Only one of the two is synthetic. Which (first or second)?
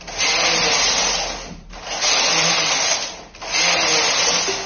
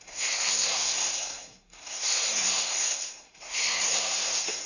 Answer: second